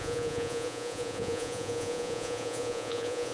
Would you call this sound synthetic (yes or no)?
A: yes